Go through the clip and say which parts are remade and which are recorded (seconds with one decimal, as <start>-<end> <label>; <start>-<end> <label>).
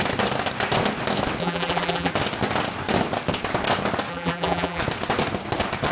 0.0-1.4 recorded; 1.4-2.1 remade; 2.1-4.1 recorded; 4.1-4.8 remade; 4.8-5.9 recorded